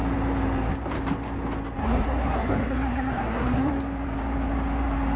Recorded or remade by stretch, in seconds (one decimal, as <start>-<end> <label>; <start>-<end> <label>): 0.0-1.8 recorded; 1.8-3.7 remade; 3.7-5.2 recorded